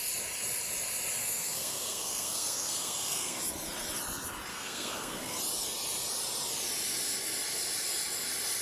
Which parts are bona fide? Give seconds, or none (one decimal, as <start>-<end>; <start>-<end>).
0.0-1.2; 3.4-4.5; 5.4-8.6